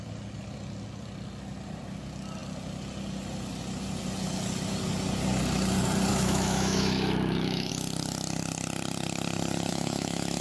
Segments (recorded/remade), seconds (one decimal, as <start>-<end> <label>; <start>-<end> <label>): 0.0-6.1 recorded; 6.1-7.7 remade; 7.7-9.7 recorded; 9.7-10.4 remade